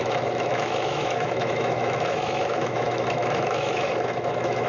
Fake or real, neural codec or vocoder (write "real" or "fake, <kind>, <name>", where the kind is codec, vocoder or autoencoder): fake, autoencoder, DAC-VAE